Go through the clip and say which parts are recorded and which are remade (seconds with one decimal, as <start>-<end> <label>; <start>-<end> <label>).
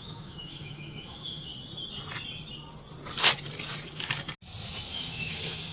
0.0-1.5 remade; 1.5-4.9 recorded; 4.9-5.7 remade